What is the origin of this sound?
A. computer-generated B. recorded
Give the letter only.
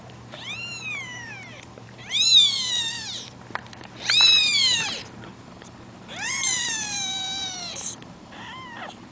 A